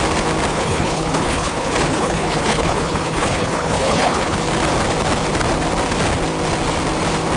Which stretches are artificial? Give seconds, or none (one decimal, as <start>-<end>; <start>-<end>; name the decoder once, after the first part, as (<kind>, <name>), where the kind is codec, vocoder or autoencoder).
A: 0.5-4.4 (codec, HILCodec)